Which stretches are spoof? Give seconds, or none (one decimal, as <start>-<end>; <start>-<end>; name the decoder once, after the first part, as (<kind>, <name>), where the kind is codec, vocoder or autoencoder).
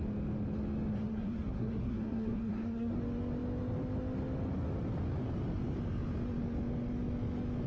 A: 0.9-3.0 (codec, SNAC)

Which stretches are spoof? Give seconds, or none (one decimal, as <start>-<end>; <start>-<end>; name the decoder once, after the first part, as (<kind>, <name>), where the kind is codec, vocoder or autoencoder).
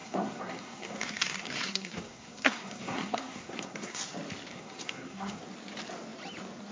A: 0.0-4.0 (codec, SNAC); 4.5-5.4